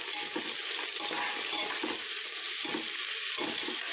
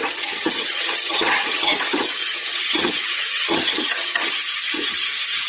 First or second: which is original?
first